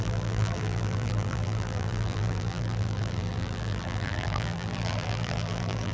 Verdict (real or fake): fake